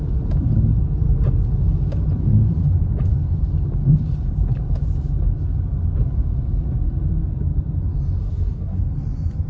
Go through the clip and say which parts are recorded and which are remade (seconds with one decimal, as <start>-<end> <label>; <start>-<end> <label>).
0.0-8.2 recorded; 8.2-8.8 remade; 8.8-9.5 recorded